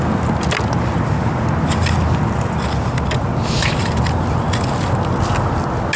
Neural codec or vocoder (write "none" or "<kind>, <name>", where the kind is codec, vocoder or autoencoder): none